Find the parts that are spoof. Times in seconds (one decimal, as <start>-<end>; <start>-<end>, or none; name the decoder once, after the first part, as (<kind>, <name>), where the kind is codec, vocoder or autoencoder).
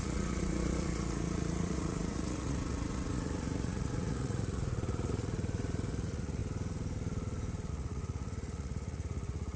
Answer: 0.0-6.4 (vocoder, Vocos); 7.7-9.6